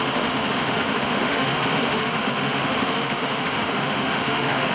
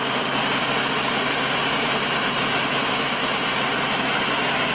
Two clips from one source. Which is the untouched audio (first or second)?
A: second